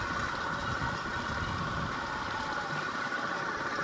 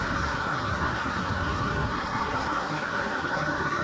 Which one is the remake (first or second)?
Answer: second